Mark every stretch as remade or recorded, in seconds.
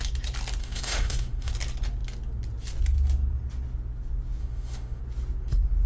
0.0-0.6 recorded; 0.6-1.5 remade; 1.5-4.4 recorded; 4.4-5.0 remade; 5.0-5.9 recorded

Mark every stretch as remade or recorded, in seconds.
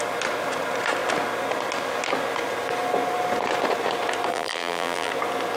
0.0-4.3 recorded; 4.3-5.1 remade; 5.1-5.6 recorded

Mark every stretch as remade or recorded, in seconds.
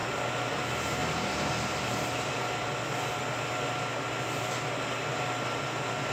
0.0-0.5 remade; 0.5-6.1 recorded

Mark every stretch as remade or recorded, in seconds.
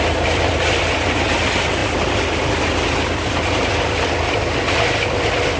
0.0-5.6 recorded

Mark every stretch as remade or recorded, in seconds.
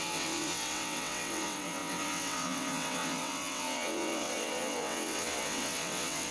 0.0-6.3 remade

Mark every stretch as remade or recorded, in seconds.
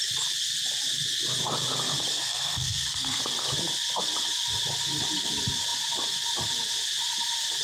0.0-2.1 recorded; 2.1-3.2 remade; 3.2-7.6 recorded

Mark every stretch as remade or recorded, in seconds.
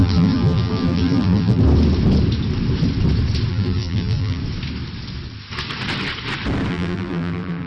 0.0-1.6 remade; 1.6-3.5 recorded; 3.5-4.4 remade; 4.4-6.7 recorded; 6.7-7.7 remade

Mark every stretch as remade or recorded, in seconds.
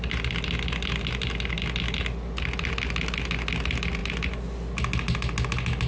0.0-5.9 recorded